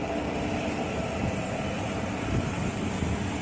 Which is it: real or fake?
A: real